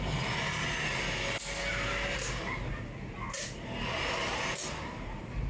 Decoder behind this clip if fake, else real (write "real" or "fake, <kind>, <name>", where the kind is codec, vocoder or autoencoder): real